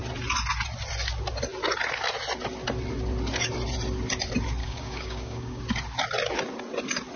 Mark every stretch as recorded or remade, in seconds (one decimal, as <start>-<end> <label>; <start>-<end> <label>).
0.0-4.6 recorded; 4.6-5.6 remade; 5.6-7.2 recorded